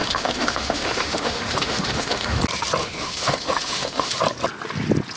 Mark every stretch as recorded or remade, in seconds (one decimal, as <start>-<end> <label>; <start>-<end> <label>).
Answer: 0.0-2.4 remade; 2.4-2.8 recorded; 2.8-4.1 remade; 4.1-5.2 recorded